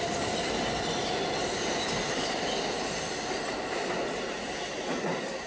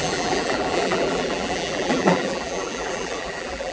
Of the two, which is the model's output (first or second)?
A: second